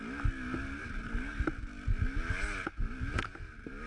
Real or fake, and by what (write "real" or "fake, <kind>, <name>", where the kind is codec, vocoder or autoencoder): real